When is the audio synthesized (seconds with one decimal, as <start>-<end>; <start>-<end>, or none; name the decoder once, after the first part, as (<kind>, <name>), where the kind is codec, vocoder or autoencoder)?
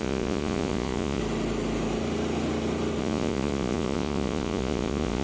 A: 0.0-1.2 (vocoder, Vocos); 3.0-5.2